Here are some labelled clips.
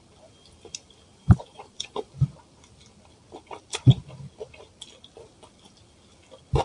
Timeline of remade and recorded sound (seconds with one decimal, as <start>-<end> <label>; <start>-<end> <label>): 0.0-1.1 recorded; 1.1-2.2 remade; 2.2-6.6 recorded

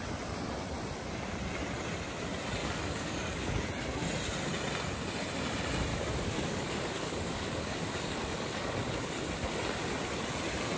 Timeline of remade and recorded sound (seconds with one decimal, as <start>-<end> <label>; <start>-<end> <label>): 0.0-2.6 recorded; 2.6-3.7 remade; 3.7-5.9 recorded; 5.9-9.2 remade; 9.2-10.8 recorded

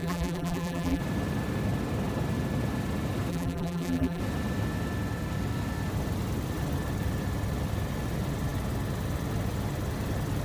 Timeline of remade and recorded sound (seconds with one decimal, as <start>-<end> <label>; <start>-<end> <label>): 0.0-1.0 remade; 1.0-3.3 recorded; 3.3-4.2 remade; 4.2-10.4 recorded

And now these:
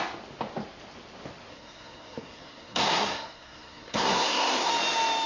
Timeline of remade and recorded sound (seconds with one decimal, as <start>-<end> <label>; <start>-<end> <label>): 0.0-1.5 recorded; 1.5-4.7 remade; 4.7-5.3 recorded